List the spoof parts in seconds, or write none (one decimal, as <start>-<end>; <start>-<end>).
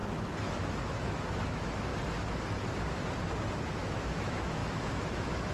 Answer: 0.6-1.9; 3.7-5.5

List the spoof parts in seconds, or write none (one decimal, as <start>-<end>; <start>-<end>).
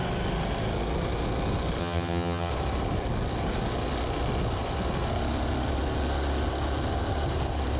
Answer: 1.8-2.5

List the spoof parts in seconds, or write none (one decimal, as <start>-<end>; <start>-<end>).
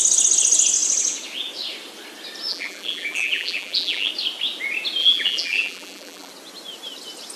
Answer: 2.5-4.1; 5.0-6.3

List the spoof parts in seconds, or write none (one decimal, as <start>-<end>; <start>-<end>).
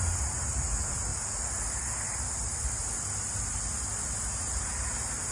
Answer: 0.0-1.1; 4.3-5.3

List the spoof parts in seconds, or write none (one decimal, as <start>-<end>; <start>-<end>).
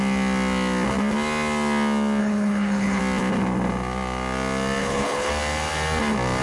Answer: 2.2-3.0; 4.8-5.3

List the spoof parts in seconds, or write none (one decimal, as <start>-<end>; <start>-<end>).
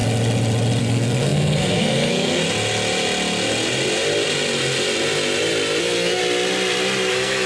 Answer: 0.8-2.4; 5.8-6.2; 7.1-7.5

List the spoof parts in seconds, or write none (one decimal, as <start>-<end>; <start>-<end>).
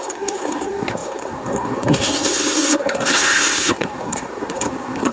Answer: 0.0-5.1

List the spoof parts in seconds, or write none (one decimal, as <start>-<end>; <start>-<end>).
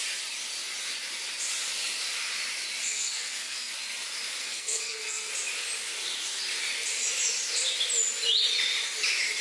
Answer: 2.8-3.7; 4.4-5.3